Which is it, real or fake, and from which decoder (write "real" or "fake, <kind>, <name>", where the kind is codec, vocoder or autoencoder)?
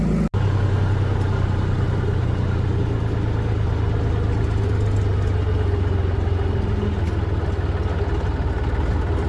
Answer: real